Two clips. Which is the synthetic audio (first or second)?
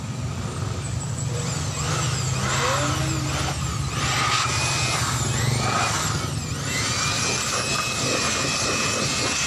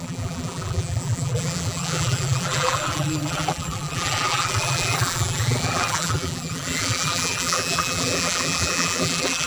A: second